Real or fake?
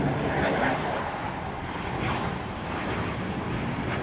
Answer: real